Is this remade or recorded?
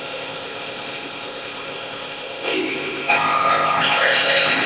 remade